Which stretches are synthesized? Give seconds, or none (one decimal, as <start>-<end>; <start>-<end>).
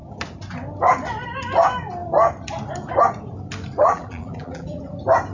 3.8-4.8